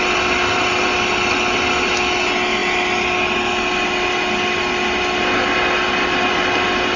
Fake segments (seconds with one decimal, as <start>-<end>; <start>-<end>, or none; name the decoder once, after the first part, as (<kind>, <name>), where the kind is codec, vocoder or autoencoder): none